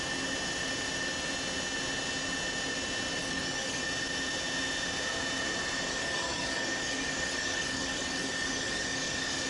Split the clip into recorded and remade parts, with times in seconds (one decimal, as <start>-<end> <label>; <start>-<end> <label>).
0.0-3.2 recorded; 3.2-3.8 remade; 3.8-5.9 recorded; 5.9-9.5 remade